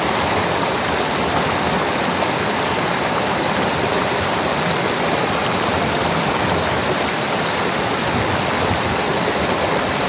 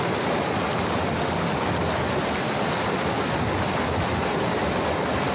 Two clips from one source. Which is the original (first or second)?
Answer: second